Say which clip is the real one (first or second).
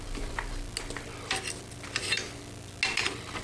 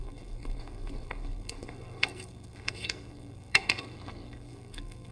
first